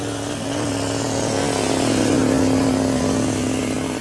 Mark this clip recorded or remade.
recorded